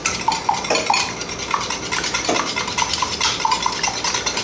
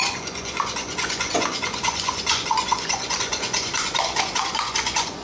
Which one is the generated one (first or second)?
second